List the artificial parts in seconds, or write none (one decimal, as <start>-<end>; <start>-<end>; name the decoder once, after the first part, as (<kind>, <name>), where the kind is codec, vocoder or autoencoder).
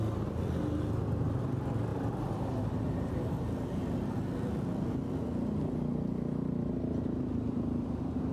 none